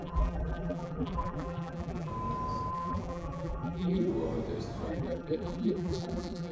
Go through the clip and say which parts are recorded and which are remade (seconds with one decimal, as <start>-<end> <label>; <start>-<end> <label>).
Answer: 0.0-2.1 remade; 2.1-2.7 recorded; 2.7-4.1 remade; 4.1-4.9 recorded; 4.9-6.5 remade